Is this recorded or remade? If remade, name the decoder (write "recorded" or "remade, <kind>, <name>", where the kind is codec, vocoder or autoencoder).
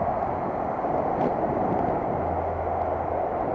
recorded